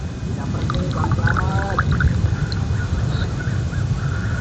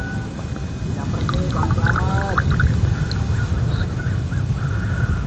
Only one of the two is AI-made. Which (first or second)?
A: first